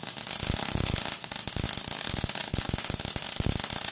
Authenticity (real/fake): real